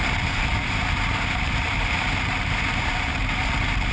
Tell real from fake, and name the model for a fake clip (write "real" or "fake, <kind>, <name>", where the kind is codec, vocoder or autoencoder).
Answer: fake, vocoder, BigVGAN v2